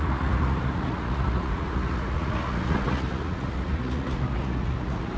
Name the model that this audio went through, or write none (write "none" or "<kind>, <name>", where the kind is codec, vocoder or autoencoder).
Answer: vocoder, Vocos